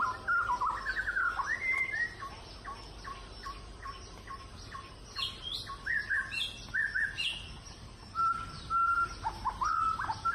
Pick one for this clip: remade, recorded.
recorded